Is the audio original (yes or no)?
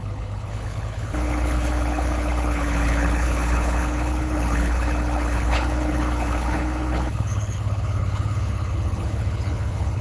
no